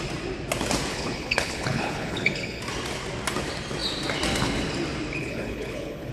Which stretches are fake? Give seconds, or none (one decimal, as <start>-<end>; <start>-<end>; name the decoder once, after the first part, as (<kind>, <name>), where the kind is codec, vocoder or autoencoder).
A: 0.9-2.6 (codec, HILCodec); 5.2-6.1